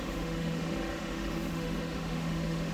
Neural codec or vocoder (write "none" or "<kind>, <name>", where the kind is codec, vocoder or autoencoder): autoencoder, DAC-VAE